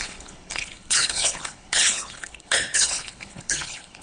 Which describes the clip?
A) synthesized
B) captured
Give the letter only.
A